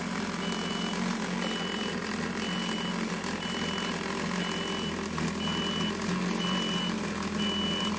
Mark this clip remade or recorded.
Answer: recorded